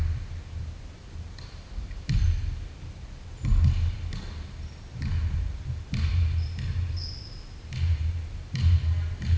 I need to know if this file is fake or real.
real